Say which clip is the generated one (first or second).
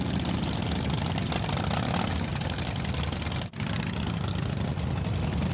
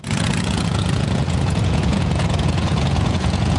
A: second